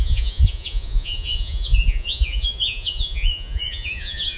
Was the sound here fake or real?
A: fake